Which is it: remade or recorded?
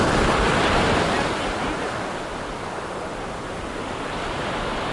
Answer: recorded